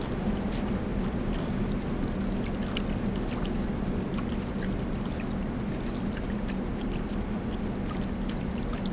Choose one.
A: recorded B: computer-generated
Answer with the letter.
A